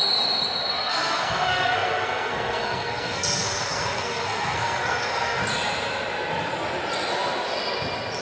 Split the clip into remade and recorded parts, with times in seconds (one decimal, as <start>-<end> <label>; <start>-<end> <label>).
0.0-0.9 recorded; 0.9-5.4 remade; 5.4-8.2 recorded